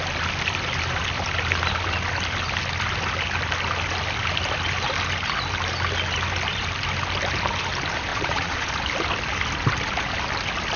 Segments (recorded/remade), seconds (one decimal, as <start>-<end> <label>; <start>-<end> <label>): 0.0-8.1 recorded; 8.1-8.7 remade; 8.7-10.8 recorded